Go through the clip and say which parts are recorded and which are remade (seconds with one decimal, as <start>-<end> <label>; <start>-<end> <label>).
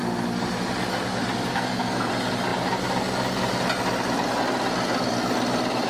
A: 0.0-1.5 recorded; 1.5-2.1 remade; 2.1-5.9 recorded